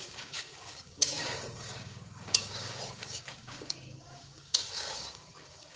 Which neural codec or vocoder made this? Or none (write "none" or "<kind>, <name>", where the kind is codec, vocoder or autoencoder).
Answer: codec, DAC